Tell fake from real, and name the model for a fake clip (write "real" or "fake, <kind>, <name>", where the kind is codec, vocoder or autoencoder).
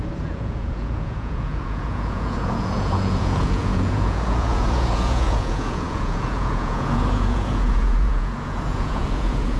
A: fake, vocoder, Vocos